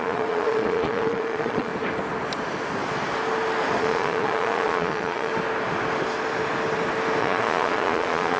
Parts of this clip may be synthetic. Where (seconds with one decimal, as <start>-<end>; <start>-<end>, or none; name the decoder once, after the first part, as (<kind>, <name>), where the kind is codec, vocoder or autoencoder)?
0.0-1.7 (vocoder, Vocos); 3.8-5.3; 7.2-8.4